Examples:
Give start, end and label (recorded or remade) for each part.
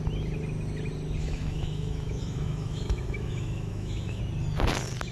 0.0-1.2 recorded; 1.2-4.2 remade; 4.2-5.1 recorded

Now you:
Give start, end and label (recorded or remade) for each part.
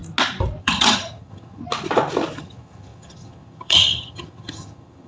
0.0-0.6 recorded; 0.6-1.6 remade; 1.6-2.4 recorded; 2.4-5.1 remade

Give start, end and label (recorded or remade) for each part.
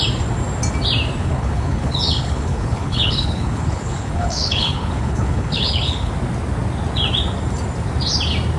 0.0-1.2 recorded; 1.2-6.1 remade; 6.1-8.6 recorded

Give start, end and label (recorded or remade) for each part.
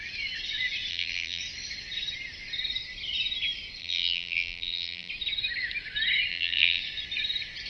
0.0-0.9 recorded; 0.9-1.4 remade; 1.4-3.8 recorded; 3.8-5.1 remade; 5.1-6.3 recorded; 6.3-6.8 remade; 6.8-7.7 recorded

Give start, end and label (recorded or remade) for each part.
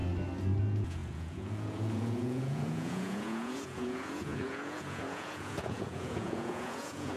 0.0-0.6 recorded; 0.6-7.2 remade